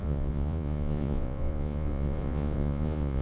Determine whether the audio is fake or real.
fake